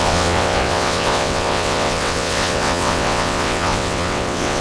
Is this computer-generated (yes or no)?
yes